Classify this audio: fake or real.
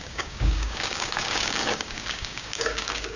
fake